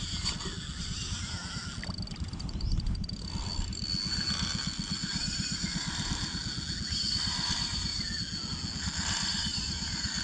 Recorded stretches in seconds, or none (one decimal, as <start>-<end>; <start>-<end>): 0.0-10.2